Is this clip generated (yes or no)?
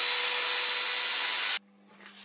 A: no